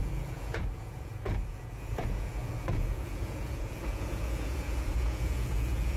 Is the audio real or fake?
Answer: fake